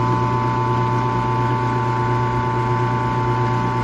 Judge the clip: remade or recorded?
recorded